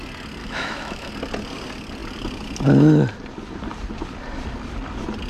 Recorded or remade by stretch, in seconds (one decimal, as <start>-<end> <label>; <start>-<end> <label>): 0.0-0.4 recorded; 0.4-1.1 remade; 1.1-5.3 recorded